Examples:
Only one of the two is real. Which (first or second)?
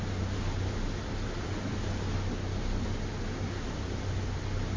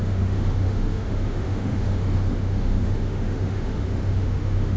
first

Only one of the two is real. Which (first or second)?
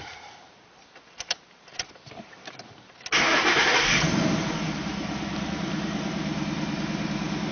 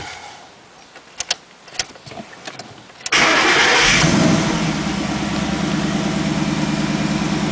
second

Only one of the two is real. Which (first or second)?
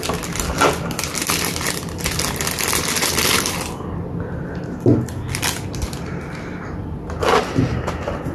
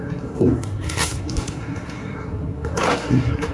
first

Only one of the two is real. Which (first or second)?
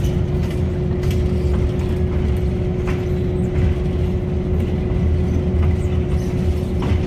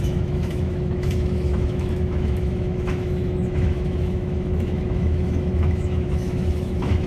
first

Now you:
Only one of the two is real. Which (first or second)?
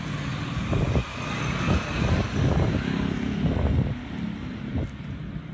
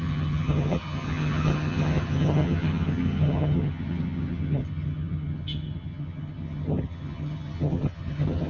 first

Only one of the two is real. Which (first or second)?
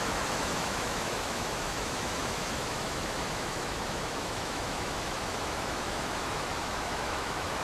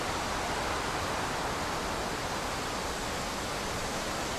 second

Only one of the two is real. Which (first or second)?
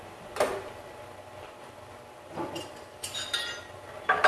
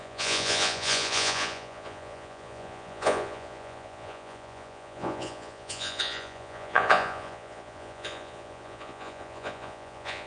first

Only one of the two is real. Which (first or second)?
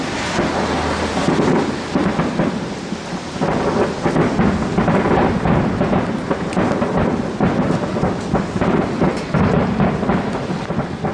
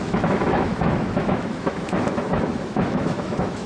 first